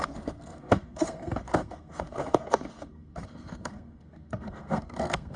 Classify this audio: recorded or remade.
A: remade